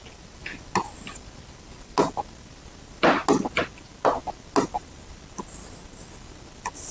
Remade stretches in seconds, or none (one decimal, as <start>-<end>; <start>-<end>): none